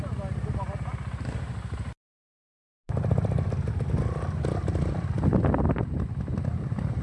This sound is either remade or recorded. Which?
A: recorded